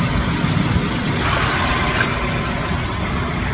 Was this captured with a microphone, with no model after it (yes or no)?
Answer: yes